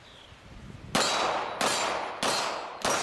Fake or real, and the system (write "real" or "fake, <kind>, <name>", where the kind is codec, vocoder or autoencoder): real